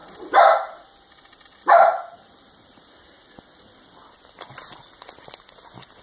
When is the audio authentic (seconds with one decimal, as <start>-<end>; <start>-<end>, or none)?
2.9-6.0